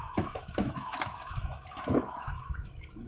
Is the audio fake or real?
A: fake